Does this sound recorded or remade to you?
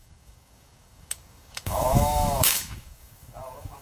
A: remade